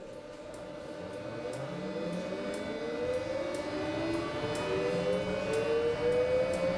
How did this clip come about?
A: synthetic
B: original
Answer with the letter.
B